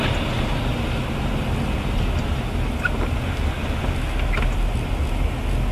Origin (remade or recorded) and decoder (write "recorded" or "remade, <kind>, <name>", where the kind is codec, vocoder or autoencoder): recorded